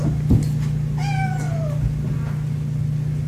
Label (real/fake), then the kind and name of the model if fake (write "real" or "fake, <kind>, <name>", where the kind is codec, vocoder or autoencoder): real